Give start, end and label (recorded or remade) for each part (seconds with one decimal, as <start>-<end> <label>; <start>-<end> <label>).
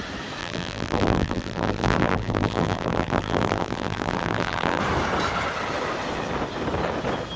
0.0-0.4 recorded; 0.4-4.8 remade; 4.8-7.4 recorded